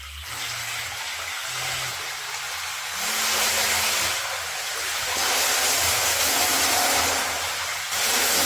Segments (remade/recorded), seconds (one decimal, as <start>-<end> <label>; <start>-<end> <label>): 0.0-8.5 recorded